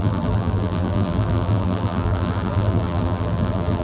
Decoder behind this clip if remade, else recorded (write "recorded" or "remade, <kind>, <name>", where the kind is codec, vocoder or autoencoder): remade, vocoder, BigVGAN v2